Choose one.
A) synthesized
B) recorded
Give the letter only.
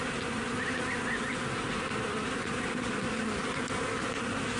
B